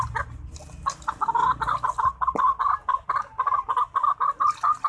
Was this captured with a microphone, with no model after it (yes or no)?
yes